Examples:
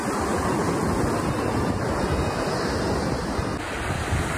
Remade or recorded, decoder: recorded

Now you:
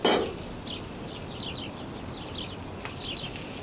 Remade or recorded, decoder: recorded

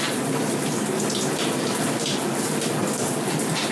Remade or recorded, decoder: remade, vocoder, BigVGAN v2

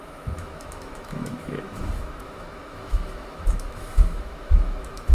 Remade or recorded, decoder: remade, autoencoder, DAC-VAE